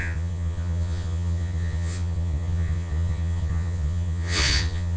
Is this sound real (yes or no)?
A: no